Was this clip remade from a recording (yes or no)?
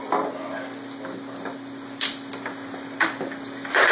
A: no